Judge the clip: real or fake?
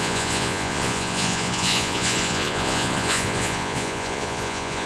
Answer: fake